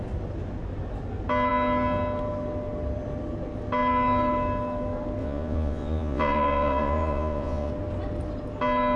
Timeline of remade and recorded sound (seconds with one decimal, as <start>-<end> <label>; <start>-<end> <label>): 0.0-5.2 recorded; 5.2-7.7 remade; 7.7-9.0 recorded